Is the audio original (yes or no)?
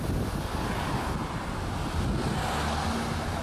yes